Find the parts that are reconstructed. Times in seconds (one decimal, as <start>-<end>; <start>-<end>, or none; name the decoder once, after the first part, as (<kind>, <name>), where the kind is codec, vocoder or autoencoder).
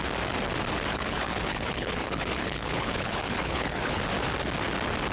0.9-4.0 (codec, HILCodec)